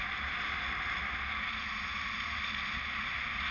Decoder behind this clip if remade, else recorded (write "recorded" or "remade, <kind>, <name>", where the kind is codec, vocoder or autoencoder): recorded